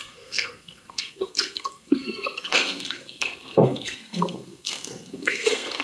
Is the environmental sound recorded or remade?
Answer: remade